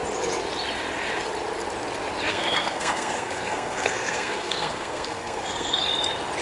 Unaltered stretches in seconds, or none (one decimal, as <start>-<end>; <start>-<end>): 0.0-2.3; 5.8-6.4